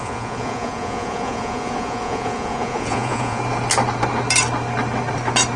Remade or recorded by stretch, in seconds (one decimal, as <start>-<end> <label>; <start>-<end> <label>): 0.0-3.4 remade; 3.4-5.6 recorded